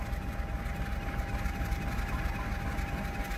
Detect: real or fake real